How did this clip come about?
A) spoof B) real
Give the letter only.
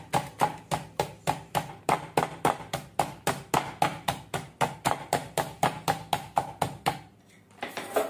B